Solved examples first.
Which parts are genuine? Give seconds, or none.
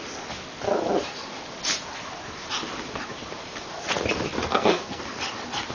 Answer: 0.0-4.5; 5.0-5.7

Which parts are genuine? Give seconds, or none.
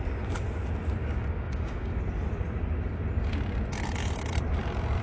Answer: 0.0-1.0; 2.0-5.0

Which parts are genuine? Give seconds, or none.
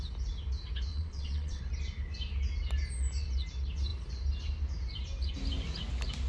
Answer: 0.0-0.9; 1.6-6.3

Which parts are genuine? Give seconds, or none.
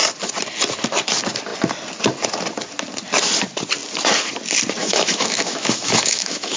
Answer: 0.0-4.8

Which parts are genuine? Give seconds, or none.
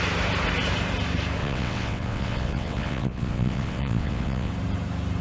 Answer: 0.0-1.4; 4.5-5.2